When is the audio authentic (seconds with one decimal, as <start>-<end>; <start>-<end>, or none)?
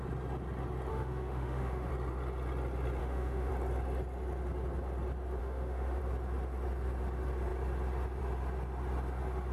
0.0-0.9; 1.9-3.0; 3.5-5.4; 6.0-9.5